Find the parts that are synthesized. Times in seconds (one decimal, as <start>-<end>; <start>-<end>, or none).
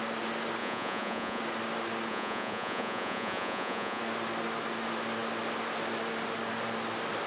0.6-1.4; 2.1-4.0